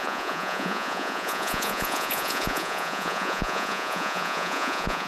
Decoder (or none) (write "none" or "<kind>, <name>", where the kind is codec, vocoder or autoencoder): vocoder, Vocos